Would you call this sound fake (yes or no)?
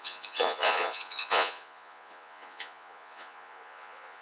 yes